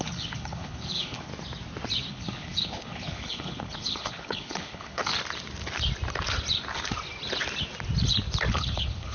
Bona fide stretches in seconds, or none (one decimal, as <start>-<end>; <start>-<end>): 1.3-2.1; 5.1-8.5